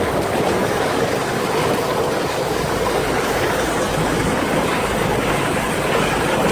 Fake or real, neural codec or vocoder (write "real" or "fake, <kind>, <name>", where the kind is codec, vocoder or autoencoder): fake, codec, DAC